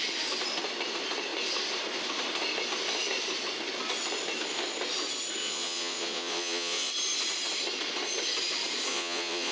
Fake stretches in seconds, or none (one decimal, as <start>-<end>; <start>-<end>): 5.4-6.9; 8.9-9.5